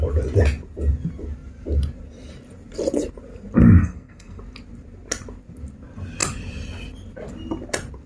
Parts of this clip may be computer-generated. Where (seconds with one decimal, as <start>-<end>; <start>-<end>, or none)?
3.8-4.4